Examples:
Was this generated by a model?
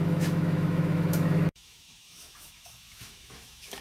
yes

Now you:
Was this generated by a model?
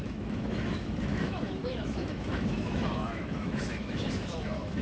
yes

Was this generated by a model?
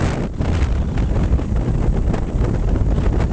no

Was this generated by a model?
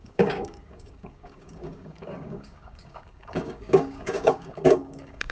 yes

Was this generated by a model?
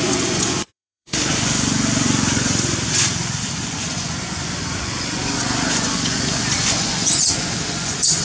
yes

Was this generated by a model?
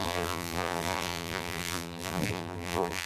yes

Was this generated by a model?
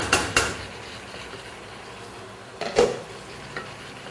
no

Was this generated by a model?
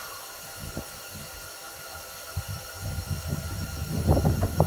yes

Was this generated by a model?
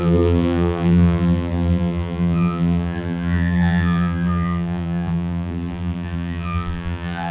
yes